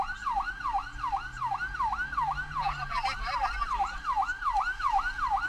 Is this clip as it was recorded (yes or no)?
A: yes